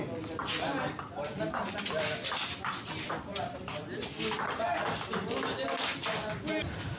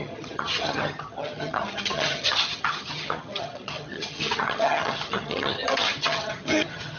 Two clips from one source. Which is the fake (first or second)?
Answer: second